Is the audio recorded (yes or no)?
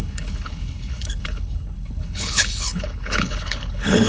no